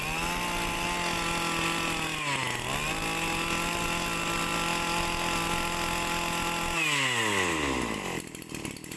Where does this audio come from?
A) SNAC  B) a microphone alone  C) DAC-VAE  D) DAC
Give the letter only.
B